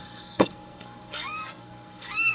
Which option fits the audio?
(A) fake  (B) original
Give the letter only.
A